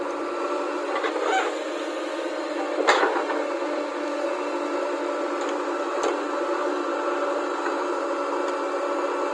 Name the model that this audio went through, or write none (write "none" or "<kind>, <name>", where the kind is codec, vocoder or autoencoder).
none